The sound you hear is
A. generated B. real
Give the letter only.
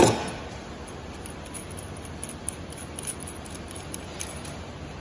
B